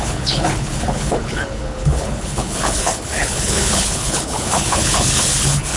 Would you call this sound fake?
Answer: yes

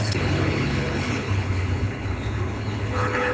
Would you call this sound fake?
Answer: yes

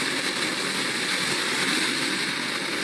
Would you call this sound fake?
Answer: no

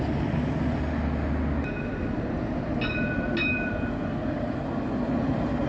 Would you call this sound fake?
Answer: no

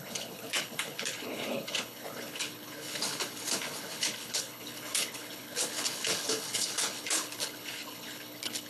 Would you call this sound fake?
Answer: yes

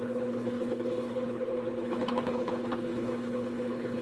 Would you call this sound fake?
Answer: yes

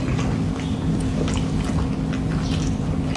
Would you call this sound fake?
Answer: no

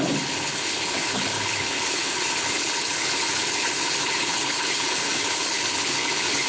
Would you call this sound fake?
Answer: yes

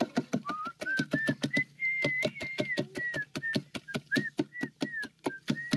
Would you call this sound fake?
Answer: no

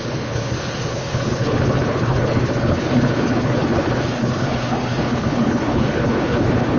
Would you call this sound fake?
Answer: yes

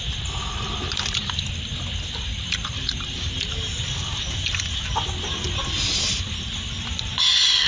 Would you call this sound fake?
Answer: no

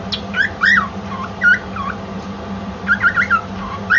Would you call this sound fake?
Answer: no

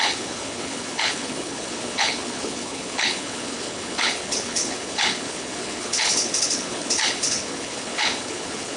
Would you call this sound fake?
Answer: yes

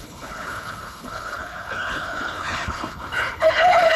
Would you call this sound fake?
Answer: yes